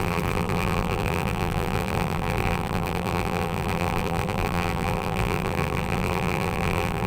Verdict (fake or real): fake